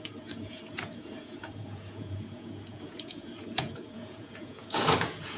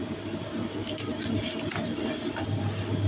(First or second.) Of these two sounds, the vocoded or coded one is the first